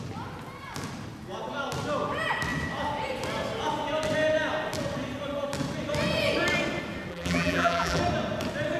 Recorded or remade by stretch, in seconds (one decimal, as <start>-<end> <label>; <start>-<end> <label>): 0.0-7.1 recorded; 7.1-8.0 remade; 8.0-8.8 recorded